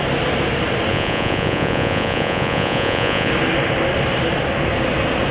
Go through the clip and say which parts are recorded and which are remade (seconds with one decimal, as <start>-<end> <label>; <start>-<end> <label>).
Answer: 0.0-0.9 recorded; 0.9-3.3 remade; 3.3-5.3 recorded